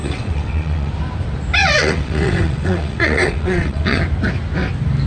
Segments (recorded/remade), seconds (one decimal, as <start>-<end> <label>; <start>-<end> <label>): 0.0-0.9 remade; 0.9-1.6 recorded; 1.6-4.0 remade; 4.0-5.1 recorded

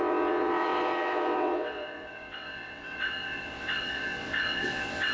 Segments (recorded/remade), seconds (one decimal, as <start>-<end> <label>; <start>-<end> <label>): 0.0-5.1 remade

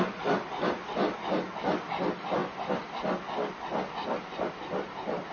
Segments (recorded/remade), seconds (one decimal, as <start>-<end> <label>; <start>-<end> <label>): 0.0-5.3 recorded

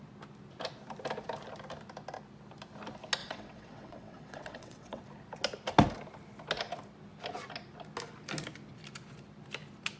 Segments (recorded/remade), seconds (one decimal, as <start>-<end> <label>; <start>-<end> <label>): 0.0-3.2 recorded; 3.2-5.0 remade; 5.0-10.0 recorded

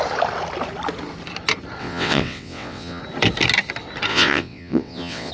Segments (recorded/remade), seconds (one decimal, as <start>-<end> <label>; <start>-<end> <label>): 0.0-1.8 recorded; 1.8-3.0 remade; 3.0-4.1 recorded; 4.1-5.3 remade